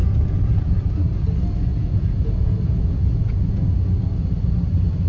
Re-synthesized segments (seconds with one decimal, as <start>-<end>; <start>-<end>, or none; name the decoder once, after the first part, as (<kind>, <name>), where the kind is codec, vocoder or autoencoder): 0.0-1.2 (vocoder, Vocos); 1.7-3.7